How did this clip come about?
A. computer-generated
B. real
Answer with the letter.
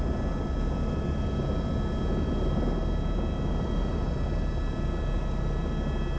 B